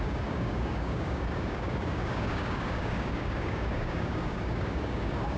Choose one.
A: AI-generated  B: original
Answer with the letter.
A